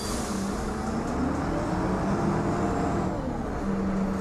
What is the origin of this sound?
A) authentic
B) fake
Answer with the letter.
A